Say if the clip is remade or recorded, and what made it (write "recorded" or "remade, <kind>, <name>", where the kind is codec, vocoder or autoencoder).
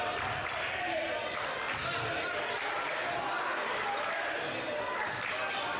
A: recorded